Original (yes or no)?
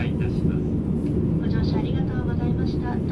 yes